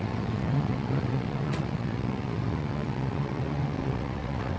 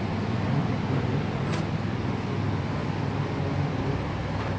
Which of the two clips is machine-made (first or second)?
first